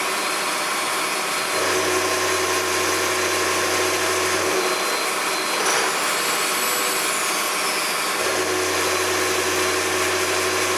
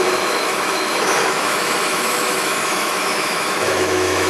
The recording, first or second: first